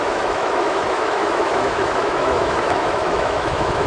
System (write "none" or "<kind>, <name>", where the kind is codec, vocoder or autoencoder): autoencoder, DAC-VAE